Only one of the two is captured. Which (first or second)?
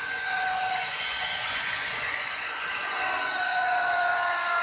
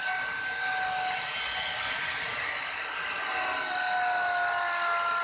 second